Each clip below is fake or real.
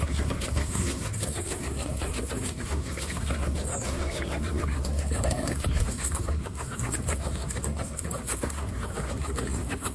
fake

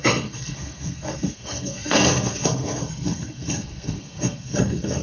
fake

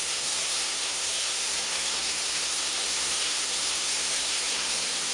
fake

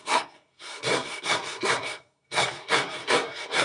fake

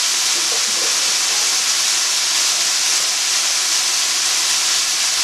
real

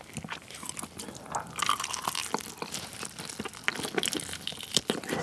real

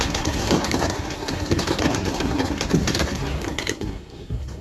fake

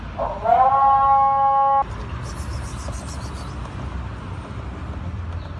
real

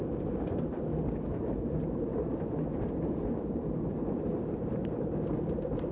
real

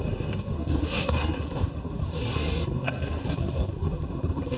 fake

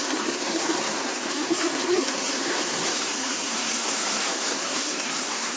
fake